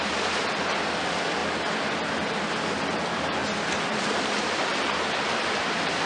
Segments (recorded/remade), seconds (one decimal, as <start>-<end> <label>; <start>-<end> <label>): 0.0-1.4 remade; 1.4-2.5 recorded; 2.5-3.4 remade; 3.4-4.0 recorded; 4.0-4.7 remade; 4.7-5.6 recorded; 5.6-6.1 remade